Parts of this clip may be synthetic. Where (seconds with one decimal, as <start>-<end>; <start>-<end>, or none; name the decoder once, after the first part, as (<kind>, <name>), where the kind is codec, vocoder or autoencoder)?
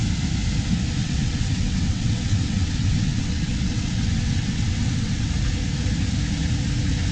1.0-5.3 (vocoder, WaveNeXt)